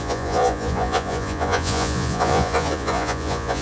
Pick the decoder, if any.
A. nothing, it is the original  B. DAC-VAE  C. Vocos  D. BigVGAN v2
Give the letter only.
C